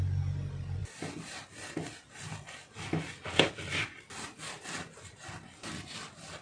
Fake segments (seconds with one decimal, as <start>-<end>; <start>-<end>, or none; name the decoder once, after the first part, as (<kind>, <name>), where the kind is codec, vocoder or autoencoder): none